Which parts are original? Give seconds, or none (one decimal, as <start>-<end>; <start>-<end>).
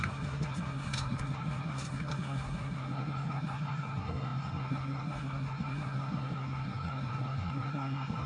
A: none